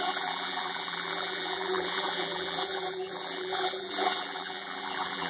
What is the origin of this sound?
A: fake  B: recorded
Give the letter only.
A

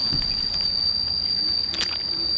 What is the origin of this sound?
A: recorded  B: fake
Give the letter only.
A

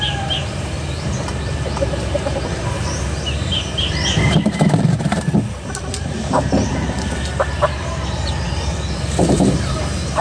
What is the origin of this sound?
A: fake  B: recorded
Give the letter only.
A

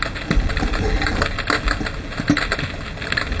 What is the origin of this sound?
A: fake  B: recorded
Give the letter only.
B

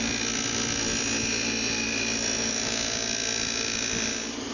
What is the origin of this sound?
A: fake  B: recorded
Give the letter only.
B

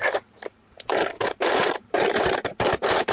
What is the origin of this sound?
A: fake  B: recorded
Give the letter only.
A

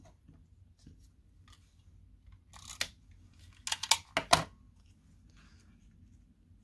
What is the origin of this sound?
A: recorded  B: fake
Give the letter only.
A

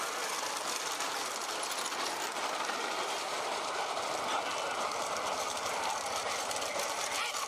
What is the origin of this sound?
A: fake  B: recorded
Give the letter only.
A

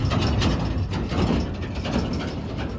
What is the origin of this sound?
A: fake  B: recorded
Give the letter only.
B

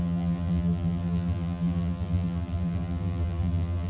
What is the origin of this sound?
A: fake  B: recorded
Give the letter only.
A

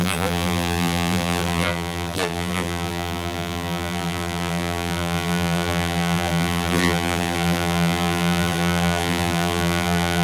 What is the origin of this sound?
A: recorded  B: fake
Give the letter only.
B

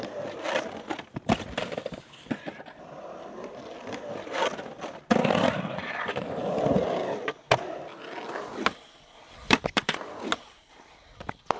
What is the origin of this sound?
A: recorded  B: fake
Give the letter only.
B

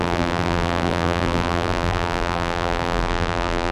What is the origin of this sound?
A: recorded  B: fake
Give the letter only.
B